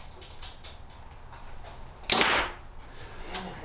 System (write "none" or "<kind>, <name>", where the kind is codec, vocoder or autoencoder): none